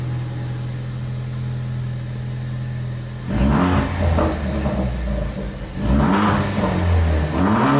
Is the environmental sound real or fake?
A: real